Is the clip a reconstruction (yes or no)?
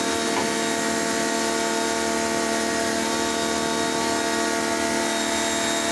no